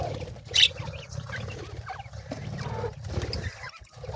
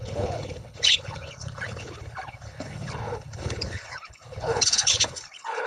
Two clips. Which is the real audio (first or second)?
first